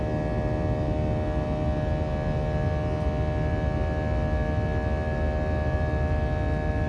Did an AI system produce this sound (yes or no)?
no